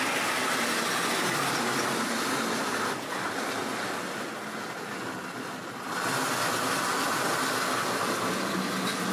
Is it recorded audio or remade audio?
recorded